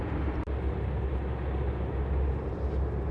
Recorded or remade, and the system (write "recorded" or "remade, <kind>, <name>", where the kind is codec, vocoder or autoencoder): recorded